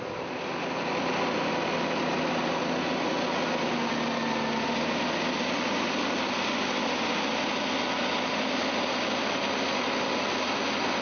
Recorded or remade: recorded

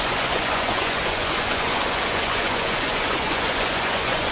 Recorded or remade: remade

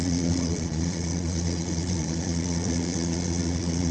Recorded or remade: remade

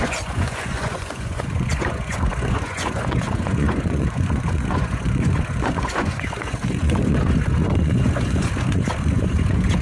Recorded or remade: remade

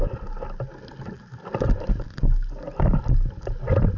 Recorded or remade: recorded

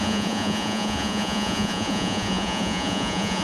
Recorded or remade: remade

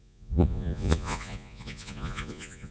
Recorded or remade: remade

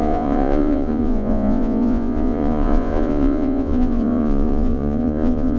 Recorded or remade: remade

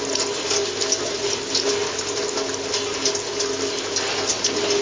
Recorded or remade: recorded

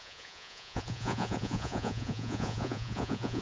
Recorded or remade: remade